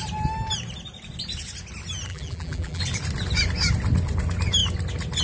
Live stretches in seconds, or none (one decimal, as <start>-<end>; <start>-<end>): 0.0-2.1; 2.8-5.2

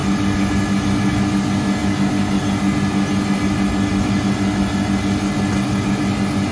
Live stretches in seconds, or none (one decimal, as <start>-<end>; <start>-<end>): 0.0-6.5

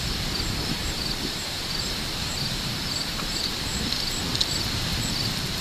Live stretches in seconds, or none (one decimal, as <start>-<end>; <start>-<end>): 0.0-0.8; 4.2-5.6